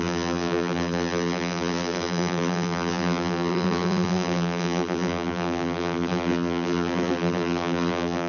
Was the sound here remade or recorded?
remade